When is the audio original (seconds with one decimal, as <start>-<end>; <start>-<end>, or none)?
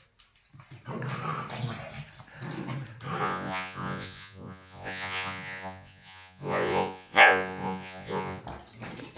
0.0-3.2; 8.4-9.2